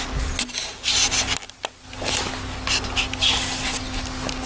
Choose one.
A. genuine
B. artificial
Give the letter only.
A